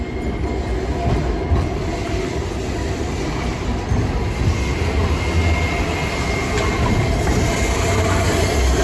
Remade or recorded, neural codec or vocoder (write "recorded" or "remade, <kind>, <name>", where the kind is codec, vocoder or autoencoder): recorded